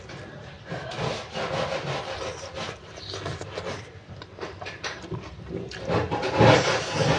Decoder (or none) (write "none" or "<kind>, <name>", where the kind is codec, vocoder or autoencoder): none